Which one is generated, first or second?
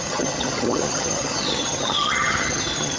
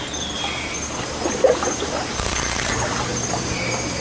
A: first